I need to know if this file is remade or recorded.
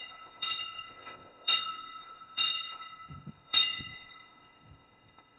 remade